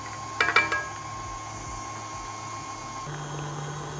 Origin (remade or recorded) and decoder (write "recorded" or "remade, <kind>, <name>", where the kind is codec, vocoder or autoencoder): recorded